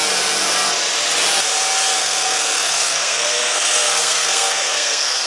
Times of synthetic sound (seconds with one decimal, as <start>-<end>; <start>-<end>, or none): 2.0-5.3

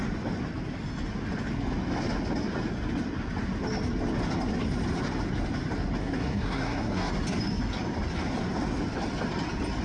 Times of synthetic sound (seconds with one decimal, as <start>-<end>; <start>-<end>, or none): 6.0-7.1

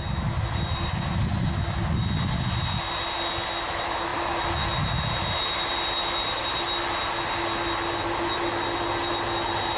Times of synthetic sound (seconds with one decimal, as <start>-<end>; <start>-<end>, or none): none

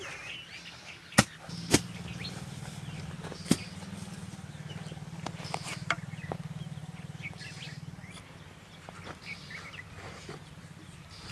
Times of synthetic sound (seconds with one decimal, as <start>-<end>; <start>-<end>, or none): none

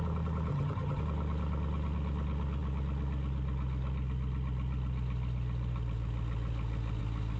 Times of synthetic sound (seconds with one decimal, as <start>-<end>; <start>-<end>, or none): 0.5-1.0

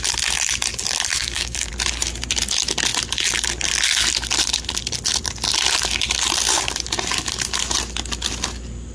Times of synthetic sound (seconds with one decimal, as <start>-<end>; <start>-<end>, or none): 1.1-1.7

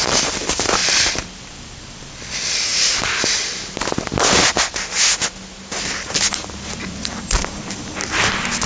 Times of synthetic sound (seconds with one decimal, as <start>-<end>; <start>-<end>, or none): 0.0-2.7; 7.0-8.7

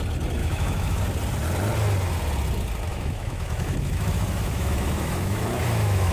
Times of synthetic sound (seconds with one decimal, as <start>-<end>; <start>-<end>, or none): 0.4-1.0; 2.9-6.1